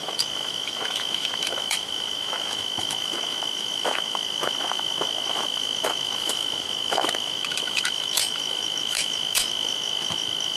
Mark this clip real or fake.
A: fake